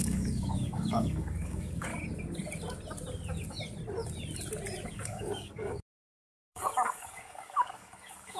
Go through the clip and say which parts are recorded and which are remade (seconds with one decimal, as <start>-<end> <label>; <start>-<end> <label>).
0.0-1.9 remade; 1.9-4.9 recorded; 4.9-8.4 remade